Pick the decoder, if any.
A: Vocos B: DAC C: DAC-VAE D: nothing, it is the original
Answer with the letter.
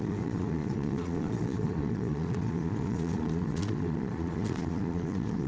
A